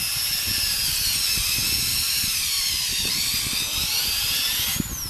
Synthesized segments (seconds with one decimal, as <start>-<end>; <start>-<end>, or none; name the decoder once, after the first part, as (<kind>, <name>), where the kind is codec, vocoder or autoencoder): 1.9-2.6 (vocoder, BigVGAN v2)

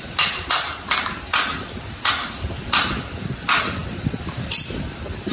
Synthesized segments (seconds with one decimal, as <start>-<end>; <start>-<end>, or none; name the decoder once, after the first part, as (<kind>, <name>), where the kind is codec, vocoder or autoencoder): none

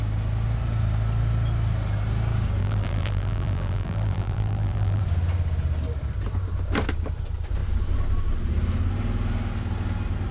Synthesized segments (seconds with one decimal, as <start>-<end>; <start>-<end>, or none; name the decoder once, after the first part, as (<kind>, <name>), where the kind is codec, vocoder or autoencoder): 2.6-5.0 (vocoder, BigVGAN v2)